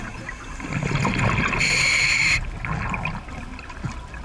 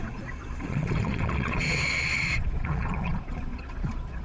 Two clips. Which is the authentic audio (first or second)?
first